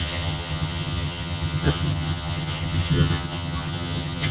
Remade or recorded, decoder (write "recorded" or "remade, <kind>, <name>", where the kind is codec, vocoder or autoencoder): remade, vocoder, HiFi-GAN